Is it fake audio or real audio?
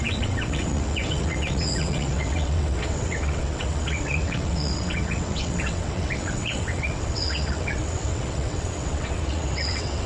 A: fake